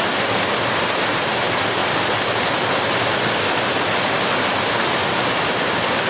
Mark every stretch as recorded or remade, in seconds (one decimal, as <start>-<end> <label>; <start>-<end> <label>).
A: 0.0-1.8 recorded; 1.8-3.7 remade; 3.7-5.0 recorded; 5.0-6.1 remade